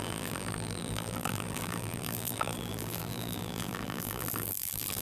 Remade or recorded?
remade